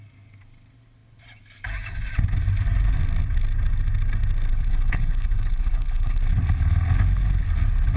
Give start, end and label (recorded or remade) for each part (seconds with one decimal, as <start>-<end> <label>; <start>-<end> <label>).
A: 0.0-4.5 recorded; 4.5-6.2 remade; 6.2-8.0 recorded